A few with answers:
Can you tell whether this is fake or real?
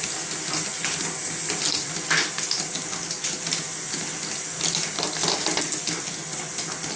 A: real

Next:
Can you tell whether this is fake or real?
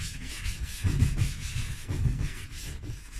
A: fake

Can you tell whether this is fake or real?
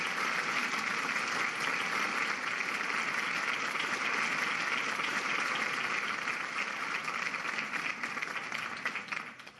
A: real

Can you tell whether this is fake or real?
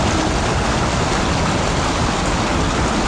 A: real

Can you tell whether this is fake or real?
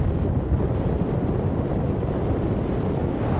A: real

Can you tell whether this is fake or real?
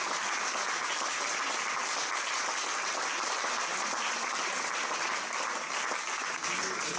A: real